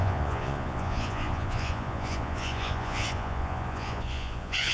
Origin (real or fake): fake